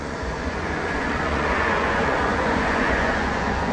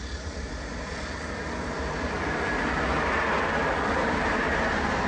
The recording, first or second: second